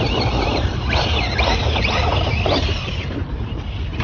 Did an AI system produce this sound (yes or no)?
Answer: yes